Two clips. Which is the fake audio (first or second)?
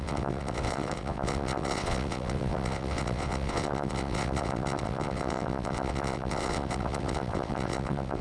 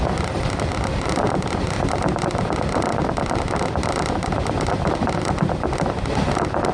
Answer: first